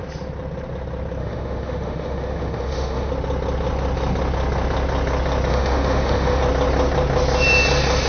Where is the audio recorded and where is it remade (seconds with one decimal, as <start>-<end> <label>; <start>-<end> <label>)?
0.0-1.2 recorded; 1.2-3.1 remade; 3.1-5.5 recorded; 5.5-6.4 remade; 6.4-8.1 recorded